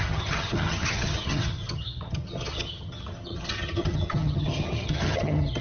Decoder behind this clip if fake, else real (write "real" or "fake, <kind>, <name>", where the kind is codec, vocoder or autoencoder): fake, vocoder, HiFi-GAN